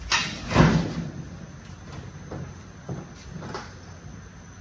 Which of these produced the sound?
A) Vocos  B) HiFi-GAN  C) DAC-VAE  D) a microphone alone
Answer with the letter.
D